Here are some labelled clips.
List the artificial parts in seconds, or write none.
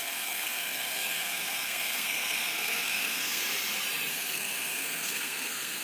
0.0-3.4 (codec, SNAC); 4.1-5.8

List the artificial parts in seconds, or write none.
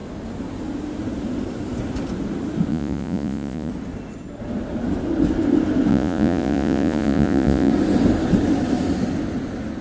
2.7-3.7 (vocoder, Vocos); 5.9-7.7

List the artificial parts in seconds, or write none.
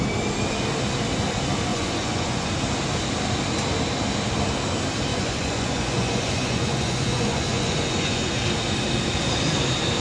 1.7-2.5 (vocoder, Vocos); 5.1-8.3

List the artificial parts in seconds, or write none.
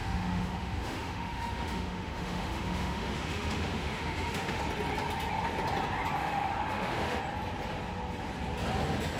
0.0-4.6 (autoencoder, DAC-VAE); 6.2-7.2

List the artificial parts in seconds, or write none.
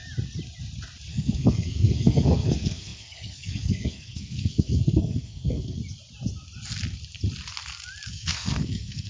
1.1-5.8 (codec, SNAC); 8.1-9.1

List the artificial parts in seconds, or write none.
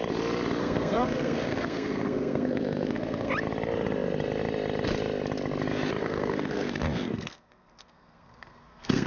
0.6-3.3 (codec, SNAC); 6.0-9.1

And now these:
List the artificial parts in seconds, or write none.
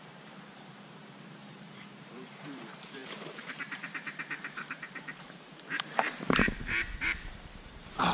0.0-8.1 (vocoder, BigVGAN v2)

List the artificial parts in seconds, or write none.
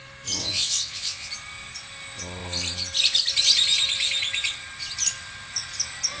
0.4-1.3 (vocoder, WaveNeXt)